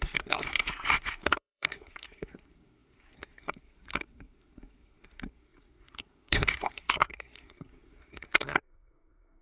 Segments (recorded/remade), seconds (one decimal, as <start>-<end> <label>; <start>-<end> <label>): 0.0-9.4 remade